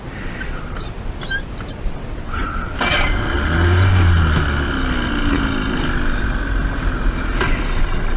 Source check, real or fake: real